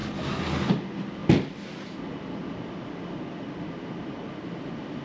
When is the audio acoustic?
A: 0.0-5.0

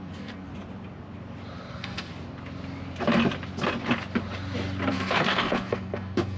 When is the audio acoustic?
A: 0.5-1.7; 2.1-4.9